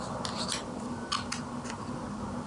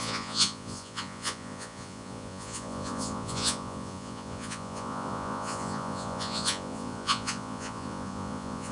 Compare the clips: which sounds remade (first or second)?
second